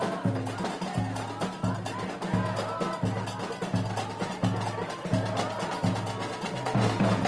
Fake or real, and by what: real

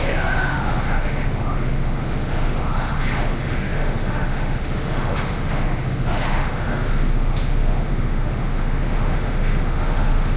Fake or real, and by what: fake, autoencoder, DAC-VAE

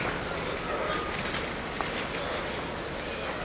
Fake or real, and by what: real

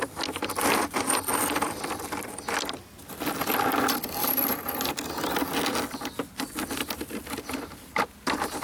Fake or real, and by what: real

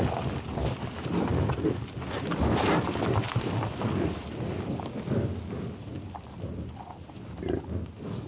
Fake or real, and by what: real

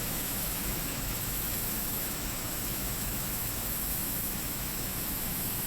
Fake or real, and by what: fake, autoencoder, DAC-VAE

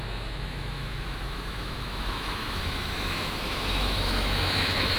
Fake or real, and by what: fake, autoencoder, DAC-VAE